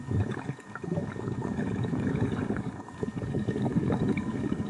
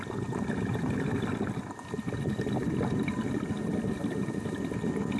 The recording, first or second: second